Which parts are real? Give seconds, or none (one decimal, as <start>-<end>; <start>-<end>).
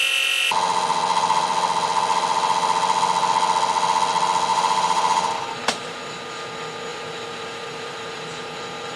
0.0-4.5; 6.0-6.9; 8.6-9.0